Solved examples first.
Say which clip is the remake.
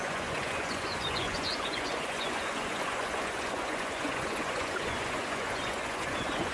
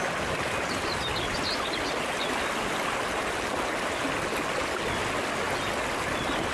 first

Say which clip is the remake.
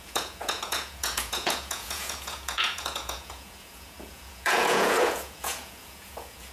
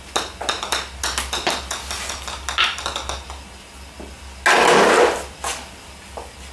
first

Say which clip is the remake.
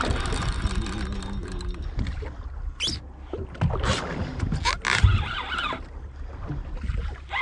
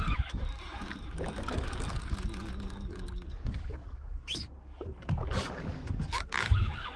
second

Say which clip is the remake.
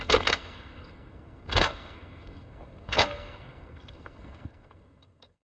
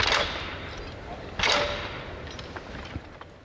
first